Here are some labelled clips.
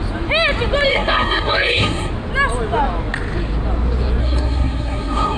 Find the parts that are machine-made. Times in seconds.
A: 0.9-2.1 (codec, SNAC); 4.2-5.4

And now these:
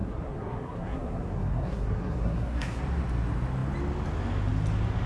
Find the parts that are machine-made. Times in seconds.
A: 0.0-2.8 (codec, SNAC)

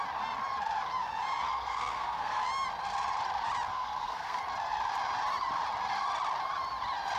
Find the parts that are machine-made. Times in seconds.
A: 1.5-2.4 (codec, SNAC); 3.7-4.4

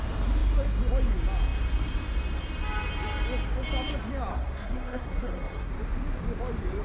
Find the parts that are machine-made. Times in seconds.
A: 4.3-5.7 (codec, SNAC)